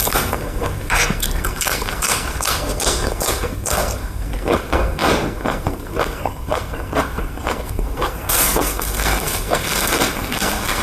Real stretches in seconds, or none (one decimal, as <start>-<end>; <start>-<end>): none